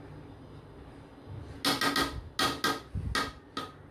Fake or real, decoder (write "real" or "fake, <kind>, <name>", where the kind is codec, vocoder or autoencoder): real